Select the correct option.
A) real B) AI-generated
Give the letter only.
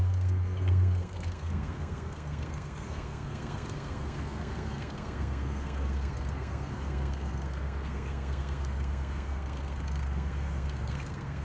B